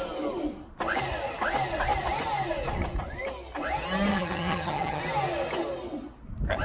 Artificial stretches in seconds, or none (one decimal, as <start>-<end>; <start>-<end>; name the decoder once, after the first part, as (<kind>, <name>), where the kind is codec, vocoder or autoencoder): 4.1-5.0 (vocoder, HiFi-GAN)